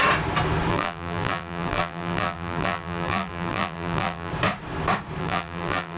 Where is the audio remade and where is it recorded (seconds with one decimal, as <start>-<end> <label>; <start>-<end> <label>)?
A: 0.0-0.7 recorded; 0.7-4.3 remade; 4.3-5.2 recorded; 5.2-6.0 remade